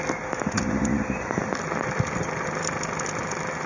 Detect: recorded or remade recorded